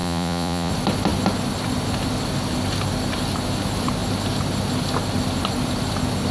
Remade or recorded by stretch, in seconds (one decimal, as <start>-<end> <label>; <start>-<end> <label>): 0.0-0.7 remade; 0.7-6.3 recorded